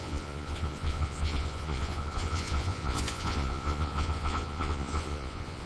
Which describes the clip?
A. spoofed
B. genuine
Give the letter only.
A